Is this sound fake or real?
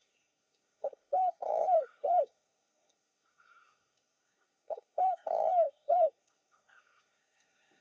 fake